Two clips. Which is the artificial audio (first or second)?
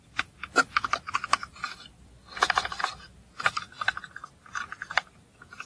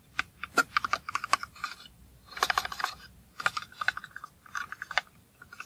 second